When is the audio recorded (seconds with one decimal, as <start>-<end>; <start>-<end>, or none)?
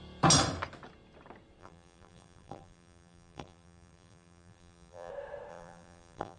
0.0-1.6; 5.1-5.5